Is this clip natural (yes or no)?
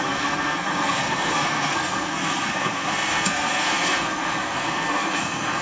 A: no